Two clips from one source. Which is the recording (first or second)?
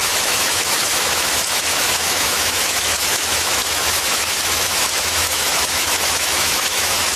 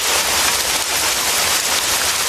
second